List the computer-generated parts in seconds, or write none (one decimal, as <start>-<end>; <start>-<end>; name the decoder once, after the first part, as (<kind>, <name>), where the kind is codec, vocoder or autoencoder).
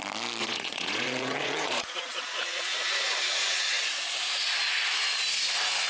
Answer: 0.4-3.9 (vocoder, Vocos)